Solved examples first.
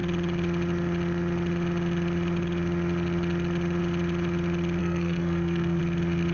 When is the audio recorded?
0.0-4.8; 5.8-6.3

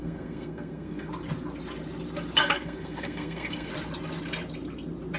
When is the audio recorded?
1.1-2.4; 3.7-5.2

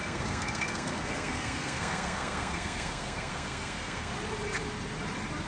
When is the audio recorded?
4.1-5.5

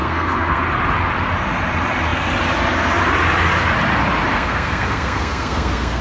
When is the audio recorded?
0.6-4.3